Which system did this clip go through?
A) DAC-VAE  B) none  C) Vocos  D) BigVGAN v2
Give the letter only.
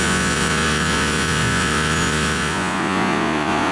C